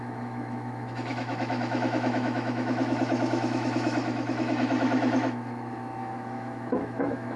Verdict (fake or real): fake